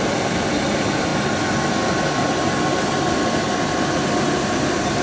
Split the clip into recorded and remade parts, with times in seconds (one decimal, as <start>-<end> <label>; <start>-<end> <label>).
0.0-5.0 recorded